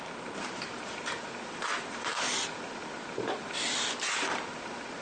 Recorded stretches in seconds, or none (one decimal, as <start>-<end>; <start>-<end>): 0.0-5.0